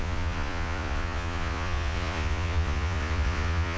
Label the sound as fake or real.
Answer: fake